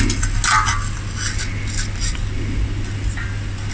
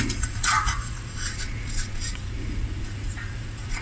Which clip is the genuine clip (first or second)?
first